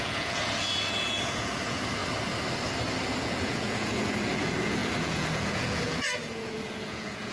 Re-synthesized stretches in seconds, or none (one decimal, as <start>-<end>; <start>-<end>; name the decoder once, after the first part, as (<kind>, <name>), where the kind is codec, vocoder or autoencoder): 0.0-2.0 (vocoder, Vocos); 3.2-7.3